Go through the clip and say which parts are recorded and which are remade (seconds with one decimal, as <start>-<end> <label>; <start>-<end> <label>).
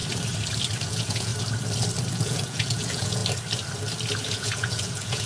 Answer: 0.0-0.8 recorded; 0.8-1.3 remade; 1.3-2.1 recorded; 2.1-3.2 remade; 3.2-4.2 recorded; 4.2-5.3 remade